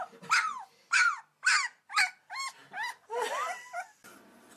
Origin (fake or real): fake